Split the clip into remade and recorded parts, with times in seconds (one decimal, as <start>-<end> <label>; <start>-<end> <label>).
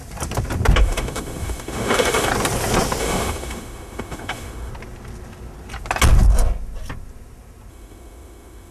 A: 0.0-0.8 recorded; 0.8-2.3 remade; 2.3-3.0 recorded; 3.0-4.7 remade; 4.7-7.7 recorded; 7.7-8.7 remade